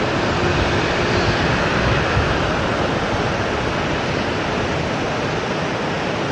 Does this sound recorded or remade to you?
recorded